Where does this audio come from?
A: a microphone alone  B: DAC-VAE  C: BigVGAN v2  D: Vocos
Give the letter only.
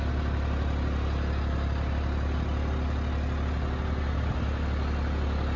A